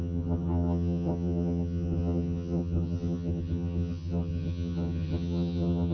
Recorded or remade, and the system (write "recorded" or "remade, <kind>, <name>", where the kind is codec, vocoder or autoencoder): remade, vocoder, HiFi-GAN